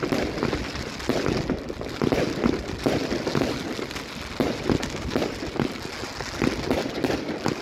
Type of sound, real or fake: real